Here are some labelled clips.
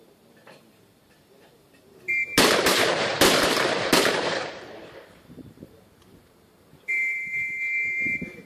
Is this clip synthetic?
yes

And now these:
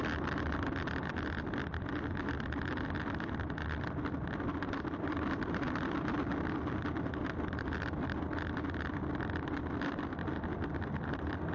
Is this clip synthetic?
yes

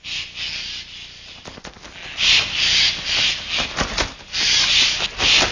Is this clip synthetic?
no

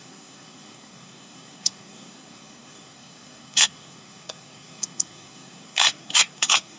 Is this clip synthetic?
yes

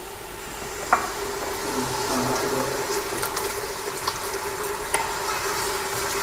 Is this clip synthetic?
no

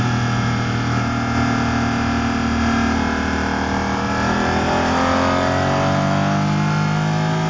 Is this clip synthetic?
no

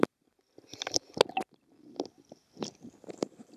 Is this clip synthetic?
no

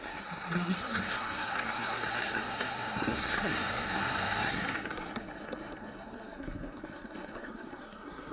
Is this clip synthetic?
yes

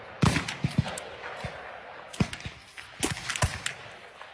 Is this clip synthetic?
no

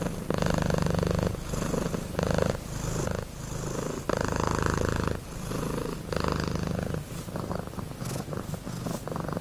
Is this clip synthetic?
no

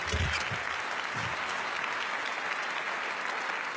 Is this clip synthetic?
no